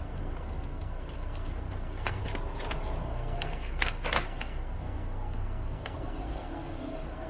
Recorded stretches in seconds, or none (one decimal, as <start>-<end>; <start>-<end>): 2.2-3.0